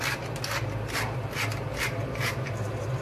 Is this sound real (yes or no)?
yes